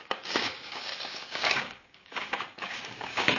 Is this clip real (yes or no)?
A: no